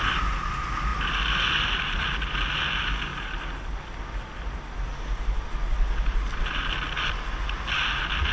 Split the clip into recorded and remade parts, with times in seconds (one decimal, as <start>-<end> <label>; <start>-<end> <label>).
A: 0.0-8.3 recorded

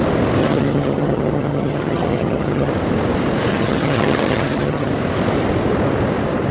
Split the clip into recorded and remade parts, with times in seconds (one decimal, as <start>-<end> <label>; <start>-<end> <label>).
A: 0.0-0.4 recorded; 0.4-2.7 remade; 2.7-3.5 recorded; 3.5-4.9 remade; 4.9-6.5 recorded